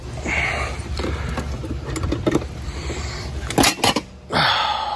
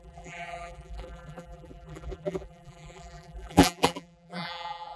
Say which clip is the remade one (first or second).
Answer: second